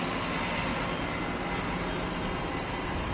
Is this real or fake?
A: real